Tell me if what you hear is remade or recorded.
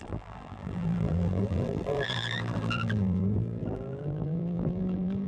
remade